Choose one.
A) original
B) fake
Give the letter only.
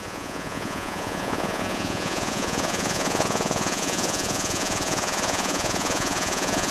B